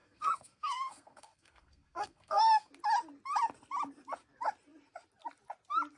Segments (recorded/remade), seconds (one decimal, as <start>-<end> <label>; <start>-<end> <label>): 0.0-2.7 remade; 2.7-6.0 recorded